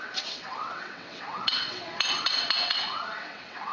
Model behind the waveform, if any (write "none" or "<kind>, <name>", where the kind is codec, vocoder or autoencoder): vocoder, WaveNeXt